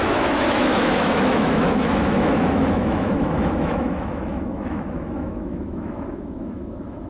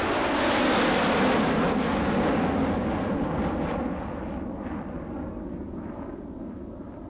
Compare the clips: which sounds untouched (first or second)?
second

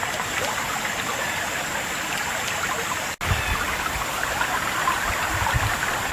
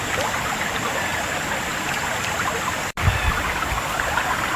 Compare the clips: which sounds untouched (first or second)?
first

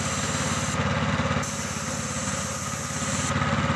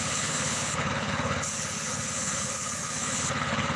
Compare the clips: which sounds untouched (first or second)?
first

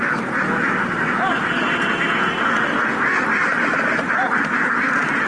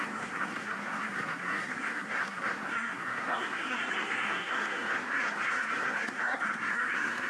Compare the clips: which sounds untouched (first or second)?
first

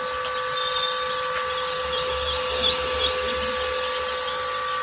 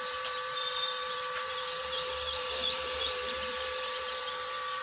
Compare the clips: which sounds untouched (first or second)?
first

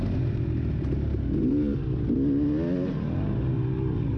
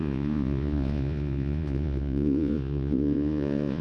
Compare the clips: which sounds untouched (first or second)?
first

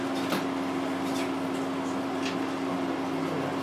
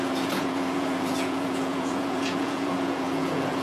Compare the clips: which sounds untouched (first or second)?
first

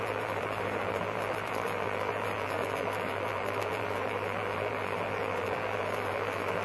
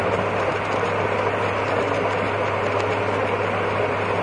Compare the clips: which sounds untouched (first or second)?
second